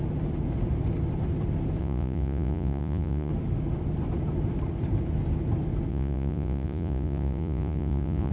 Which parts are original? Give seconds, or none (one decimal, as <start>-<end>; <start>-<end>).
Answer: 0.0-1.8; 3.3-5.9